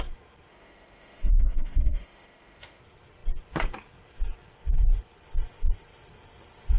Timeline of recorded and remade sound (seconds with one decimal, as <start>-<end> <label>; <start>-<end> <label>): 0.0-0.5 recorded; 0.5-2.8 remade; 2.8-6.8 recorded